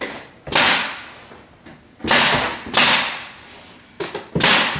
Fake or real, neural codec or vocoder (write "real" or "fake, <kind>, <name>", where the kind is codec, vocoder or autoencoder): real